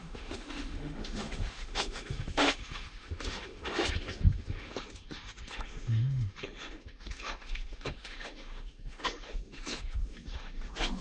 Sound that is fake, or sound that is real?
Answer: fake